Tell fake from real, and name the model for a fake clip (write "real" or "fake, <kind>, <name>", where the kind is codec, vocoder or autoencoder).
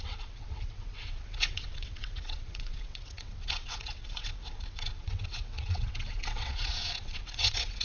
fake, vocoder, WaveNeXt